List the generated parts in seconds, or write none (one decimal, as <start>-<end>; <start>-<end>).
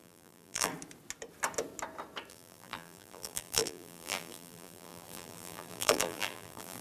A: 0.0-0.7; 2.3-6.8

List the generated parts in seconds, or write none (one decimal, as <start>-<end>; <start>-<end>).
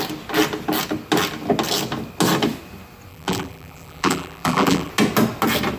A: 3.1-4.9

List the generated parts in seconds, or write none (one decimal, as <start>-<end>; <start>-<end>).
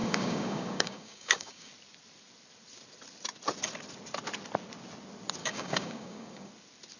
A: 0.0-1.7; 5.4-6.5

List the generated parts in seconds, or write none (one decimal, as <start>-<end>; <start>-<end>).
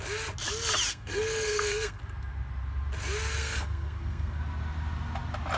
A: 0.9-2.0; 3.4-4.4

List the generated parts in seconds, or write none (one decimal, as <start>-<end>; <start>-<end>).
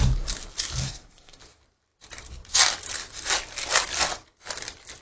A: 0.8-1.4